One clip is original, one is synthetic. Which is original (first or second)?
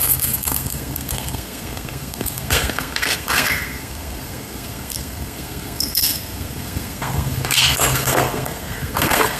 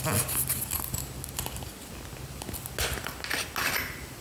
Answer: second